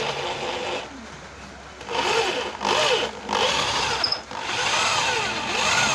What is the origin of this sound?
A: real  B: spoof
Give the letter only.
A